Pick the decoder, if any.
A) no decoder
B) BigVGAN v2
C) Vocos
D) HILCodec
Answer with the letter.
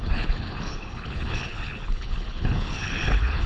D